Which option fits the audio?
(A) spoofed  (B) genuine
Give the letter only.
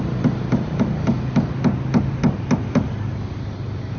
B